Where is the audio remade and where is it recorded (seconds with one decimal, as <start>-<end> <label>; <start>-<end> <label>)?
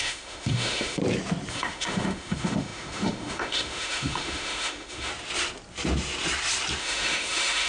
0.0-1.0 remade; 1.0-1.5 recorded; 1.5-5.1 remade; 5.1-6.8 recorded; 6.8-7.7 remade